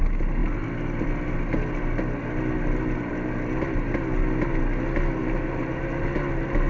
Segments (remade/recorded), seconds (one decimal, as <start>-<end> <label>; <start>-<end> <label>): 0.0-6.7 recorded